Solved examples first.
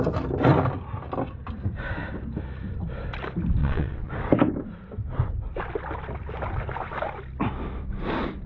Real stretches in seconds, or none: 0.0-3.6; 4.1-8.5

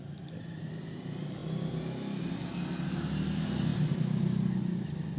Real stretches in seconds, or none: 0.0-5.2

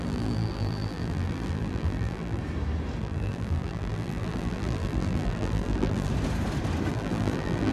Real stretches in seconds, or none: 2.4-3.0; 6.1-6.9